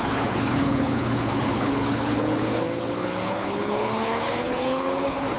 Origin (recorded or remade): remade